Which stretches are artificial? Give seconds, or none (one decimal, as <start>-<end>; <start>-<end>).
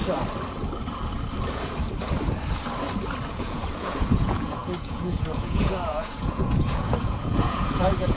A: 3.3-8.2